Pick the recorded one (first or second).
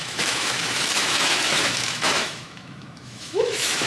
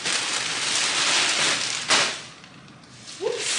second